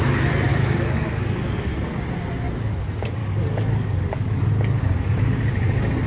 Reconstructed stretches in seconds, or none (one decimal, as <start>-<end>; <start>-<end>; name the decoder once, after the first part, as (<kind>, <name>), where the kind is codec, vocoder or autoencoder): 0.5-1.7 (codec, DAC); 3.2-4.5